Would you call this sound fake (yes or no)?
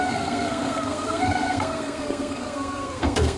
yes